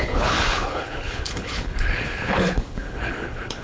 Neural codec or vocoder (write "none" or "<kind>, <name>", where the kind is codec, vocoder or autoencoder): codec, HILCodec